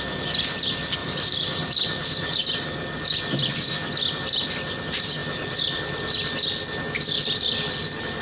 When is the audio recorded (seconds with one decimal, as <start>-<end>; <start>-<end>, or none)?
0.0-1.0; 2.8-8.2